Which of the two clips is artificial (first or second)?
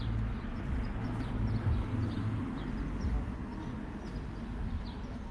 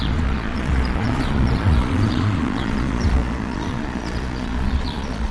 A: second